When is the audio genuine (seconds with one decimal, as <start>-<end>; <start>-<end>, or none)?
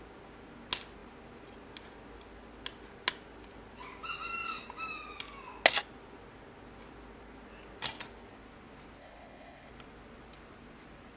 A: 0.0-9.0; 9.7-11.2